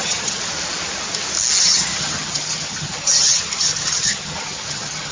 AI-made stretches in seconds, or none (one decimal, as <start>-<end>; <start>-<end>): 0.0-0.4; 1.6-5.1

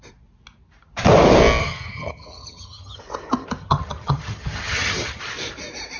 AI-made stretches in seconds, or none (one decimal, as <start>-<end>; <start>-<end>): 1.6-3.0; 3.6-5.2